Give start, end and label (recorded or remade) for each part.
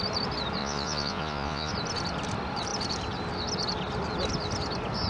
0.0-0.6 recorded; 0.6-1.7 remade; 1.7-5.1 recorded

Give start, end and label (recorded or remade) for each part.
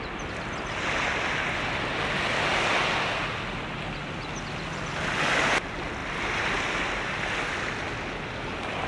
0.0-8.9 recorded